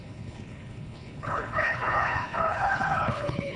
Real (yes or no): no